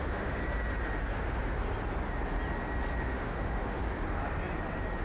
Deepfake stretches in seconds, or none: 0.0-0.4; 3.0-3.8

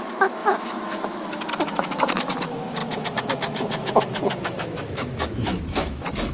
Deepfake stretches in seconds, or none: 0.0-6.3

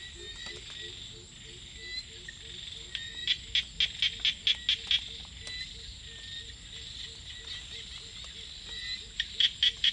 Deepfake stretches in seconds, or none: 8.8-9.9